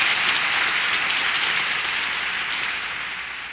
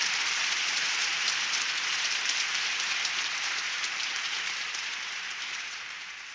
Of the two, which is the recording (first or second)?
first